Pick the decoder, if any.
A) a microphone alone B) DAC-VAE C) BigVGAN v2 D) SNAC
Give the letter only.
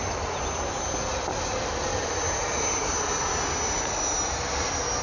A